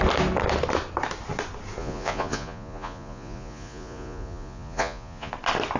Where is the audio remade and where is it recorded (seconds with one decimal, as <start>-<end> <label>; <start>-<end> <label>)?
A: 0.0-1.8 recorded; 1.8-5.3 remade; 5.3-5.8 recorded